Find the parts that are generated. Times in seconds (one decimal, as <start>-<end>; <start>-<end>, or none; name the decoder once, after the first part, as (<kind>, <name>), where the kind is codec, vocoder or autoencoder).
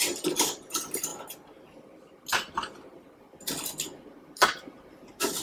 0.0-1.1 (vocoder, BigVGAN v2); 4.3-5.4